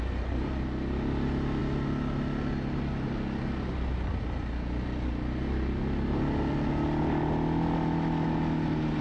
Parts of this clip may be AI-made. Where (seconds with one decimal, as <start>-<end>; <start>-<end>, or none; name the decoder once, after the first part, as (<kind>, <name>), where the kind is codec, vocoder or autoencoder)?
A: none